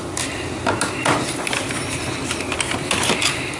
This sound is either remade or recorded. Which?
remade